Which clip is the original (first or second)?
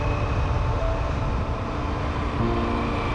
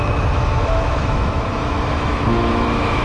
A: first